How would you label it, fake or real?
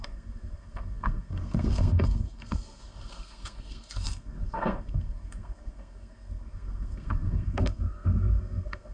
fake